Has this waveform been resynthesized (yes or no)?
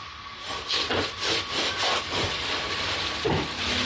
no